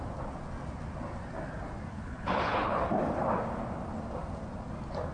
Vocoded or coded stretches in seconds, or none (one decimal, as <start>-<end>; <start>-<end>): 1.9-2.9